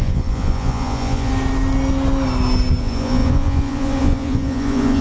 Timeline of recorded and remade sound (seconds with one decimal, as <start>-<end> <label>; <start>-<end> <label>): 0.0-1.3 remade; 1.3-2.8 recorded; 2.8-5.0 remade